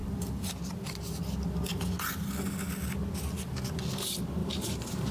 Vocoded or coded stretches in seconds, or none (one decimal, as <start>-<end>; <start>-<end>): 4.4-5.1